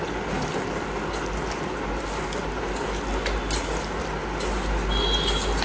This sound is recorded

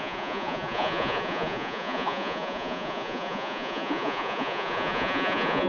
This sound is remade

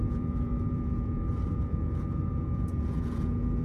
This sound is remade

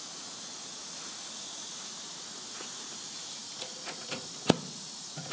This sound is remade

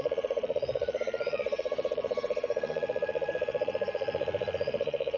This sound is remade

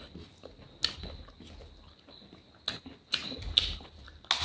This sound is recorded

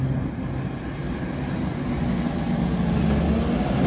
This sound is recorded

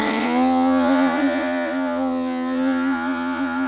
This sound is remade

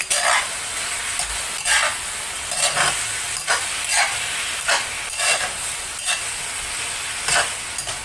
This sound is recorded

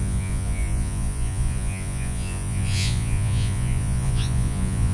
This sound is remade